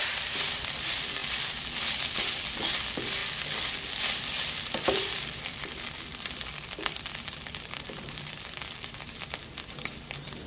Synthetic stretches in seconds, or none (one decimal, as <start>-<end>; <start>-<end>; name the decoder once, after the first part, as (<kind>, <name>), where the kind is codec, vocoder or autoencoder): 0.0-1.2 (vocoder, BigVGAN v2); 2.7-3.2; 4.2-10.5